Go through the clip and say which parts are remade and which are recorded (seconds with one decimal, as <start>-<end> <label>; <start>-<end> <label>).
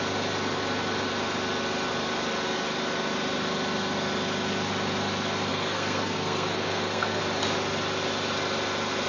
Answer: 0.0-5.5 recorded; 5.5-7.2 remade; 7.2-9.1 recorded